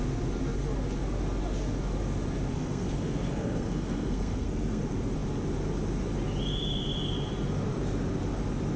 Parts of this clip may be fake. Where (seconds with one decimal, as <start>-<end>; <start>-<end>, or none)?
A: 2.5-4.8